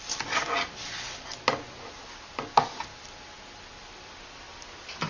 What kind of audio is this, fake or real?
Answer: real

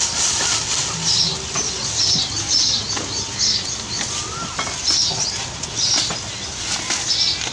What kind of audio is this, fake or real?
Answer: real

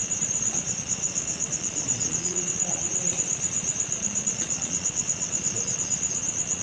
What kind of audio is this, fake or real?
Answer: fake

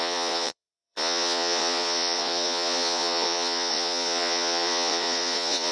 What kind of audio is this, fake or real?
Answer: fake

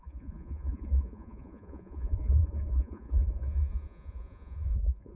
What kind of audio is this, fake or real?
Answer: fake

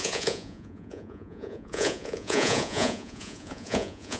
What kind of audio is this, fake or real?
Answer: fake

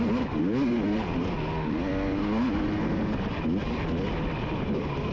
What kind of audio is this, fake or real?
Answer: real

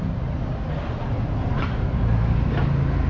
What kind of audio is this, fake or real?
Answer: real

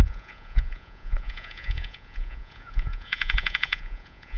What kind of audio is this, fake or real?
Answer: fake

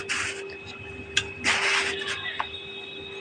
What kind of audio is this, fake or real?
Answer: real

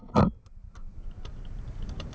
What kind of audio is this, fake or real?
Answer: real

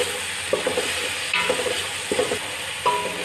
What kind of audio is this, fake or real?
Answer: real